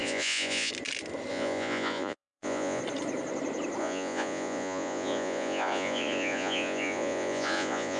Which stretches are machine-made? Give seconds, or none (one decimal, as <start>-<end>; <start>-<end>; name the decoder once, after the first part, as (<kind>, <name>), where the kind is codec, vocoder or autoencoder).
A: 0.0-0.7 (vocoder, Vocos); 1.3-2.8; 3.8-8.0